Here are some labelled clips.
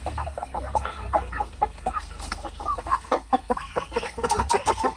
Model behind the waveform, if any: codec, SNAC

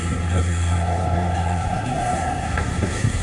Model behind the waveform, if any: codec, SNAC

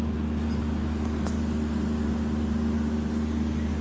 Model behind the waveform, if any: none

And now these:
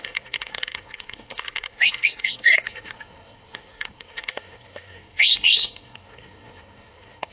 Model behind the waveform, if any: codec, SNAC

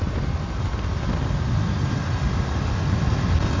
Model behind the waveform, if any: none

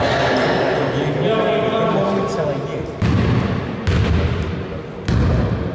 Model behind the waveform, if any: none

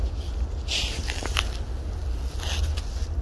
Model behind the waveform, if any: none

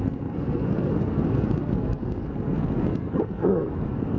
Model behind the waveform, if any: codec, SNAC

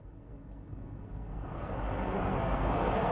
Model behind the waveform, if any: codec, SNAC